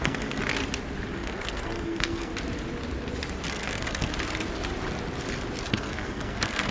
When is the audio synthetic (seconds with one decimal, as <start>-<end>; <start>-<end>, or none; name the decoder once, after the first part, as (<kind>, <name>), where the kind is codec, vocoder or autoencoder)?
0.0-0.4 (codec, SNAC); 1.1-2.3; 3.5-4.1; 5.7-6.7